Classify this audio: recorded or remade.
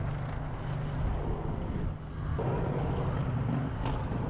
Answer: recorded